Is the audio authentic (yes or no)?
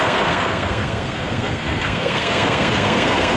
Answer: no